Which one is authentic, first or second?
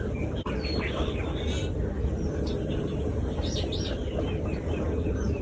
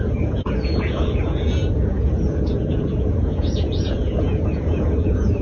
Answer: first